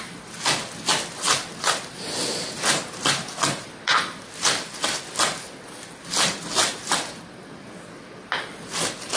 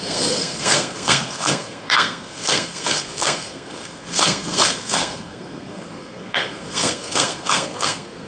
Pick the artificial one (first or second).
second